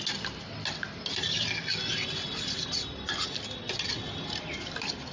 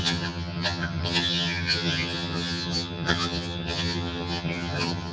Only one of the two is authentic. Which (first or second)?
first